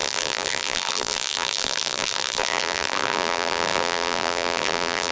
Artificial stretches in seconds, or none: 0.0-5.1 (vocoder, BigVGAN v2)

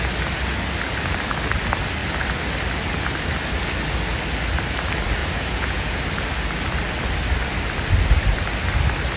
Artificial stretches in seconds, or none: 5.2-6.0 (vocoder, Vocos)

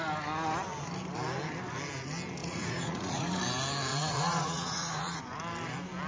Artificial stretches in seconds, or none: 2.4-3.4 (vocoder, Vocos); 3.9-5.2